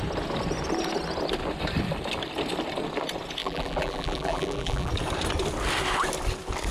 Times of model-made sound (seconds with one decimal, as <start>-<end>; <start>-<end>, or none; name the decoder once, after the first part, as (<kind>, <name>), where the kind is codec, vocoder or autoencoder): 3.4-4.9 (vocoder, BigVGAN v2)